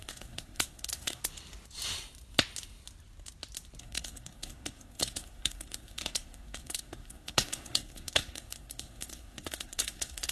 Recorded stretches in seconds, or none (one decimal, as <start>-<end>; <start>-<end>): 1.2-3.8